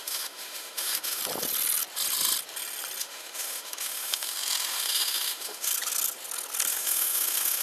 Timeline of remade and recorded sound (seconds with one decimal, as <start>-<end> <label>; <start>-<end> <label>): 0.0-1.2 remade; 1.2-3.0 recorded; 3.0-5.7 remade; 5.7-6.7 recorded; 6.7-7.6 remade